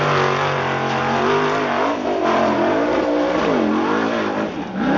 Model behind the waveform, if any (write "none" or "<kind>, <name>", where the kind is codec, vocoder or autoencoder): none